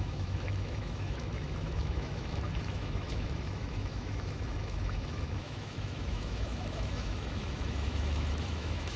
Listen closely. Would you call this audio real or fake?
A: fake